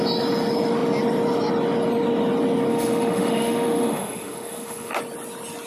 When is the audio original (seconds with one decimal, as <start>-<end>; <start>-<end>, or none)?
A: 0.0-2.7; 4.9-5.7